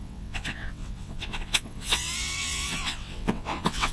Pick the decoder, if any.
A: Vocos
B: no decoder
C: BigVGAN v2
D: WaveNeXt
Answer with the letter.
D